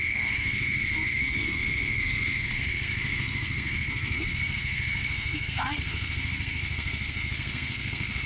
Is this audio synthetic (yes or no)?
yes